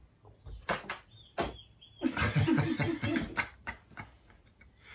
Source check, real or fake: real